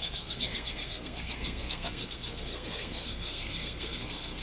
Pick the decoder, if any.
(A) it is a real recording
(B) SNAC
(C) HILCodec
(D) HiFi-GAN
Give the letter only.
B